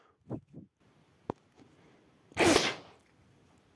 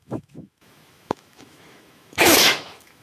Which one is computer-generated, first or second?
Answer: second